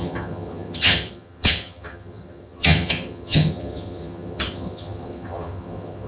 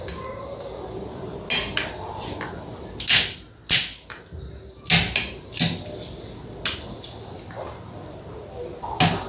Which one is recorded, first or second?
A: second